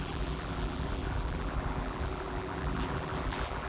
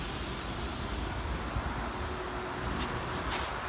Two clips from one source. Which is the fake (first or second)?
first